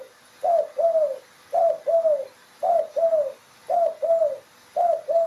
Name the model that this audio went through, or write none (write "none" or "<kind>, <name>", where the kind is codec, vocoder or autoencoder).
none